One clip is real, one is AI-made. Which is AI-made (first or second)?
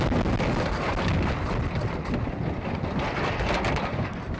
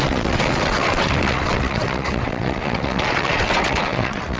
second